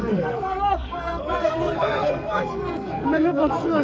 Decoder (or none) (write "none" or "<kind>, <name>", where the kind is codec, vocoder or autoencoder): codec, SNAC